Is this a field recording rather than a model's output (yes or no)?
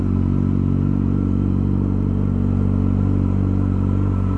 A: yes